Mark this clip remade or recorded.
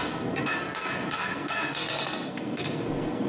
remade